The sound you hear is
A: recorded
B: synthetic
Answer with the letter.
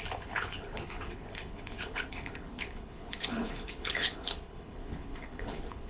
B